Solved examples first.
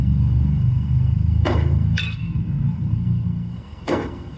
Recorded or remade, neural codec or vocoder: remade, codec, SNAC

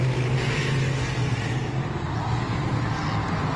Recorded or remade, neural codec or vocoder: recorded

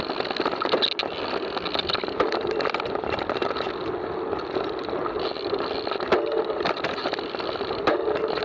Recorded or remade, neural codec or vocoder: recorded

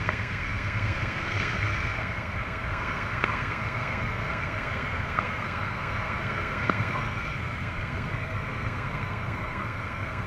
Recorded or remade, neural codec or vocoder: remade, codec, SNAC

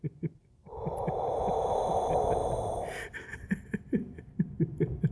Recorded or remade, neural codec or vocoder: recorded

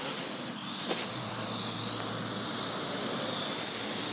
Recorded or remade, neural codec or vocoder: recorded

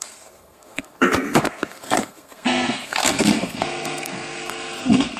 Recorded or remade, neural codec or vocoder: remade, codec, SNAC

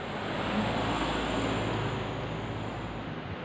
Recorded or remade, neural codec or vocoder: recorded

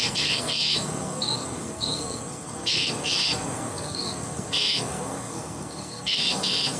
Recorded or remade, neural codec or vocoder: remade, codec, SNAC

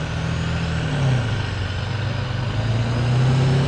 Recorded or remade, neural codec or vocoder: recorded